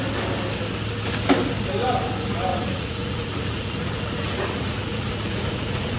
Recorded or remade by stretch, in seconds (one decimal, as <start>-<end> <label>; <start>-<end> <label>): 0.0-2.5 recorded; 2.5-6.0 remade